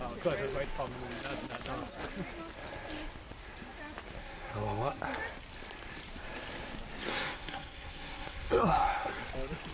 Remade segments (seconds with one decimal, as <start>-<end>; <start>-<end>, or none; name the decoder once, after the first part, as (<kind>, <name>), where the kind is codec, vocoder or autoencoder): 4.2-5.0 (codec, SNAC); 7.1-9.2